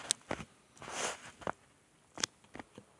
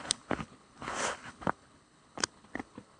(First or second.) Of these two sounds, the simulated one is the second